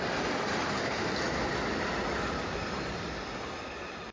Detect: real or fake fake